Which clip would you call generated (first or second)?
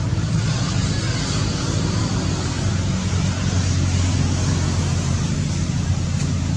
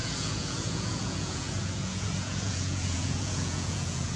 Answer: second